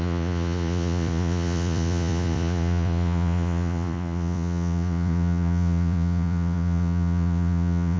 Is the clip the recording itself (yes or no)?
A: no